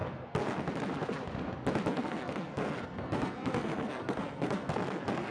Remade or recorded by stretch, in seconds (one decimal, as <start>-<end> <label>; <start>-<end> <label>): 0.0-0.7 remade; 0.7-1.9 recorded; 1.9-5.3 remade